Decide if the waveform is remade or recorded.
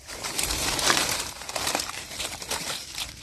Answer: remade